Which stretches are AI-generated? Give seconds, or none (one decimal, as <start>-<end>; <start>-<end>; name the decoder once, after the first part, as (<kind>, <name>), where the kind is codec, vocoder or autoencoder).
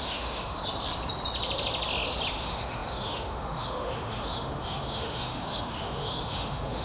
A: 0.0-0.6 (autoencoder, DAC-VAE); 2.3-6.8